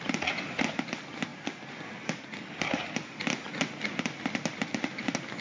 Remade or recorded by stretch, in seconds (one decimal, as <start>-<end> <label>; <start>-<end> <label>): 0.0-5.4 recorded